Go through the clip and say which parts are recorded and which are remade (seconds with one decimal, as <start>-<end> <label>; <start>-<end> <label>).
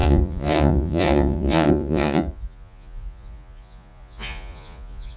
0.0-5.2 remade